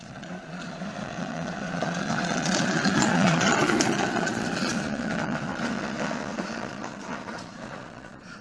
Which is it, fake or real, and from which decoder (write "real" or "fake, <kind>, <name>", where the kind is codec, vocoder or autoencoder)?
fake, vocoder, Vocos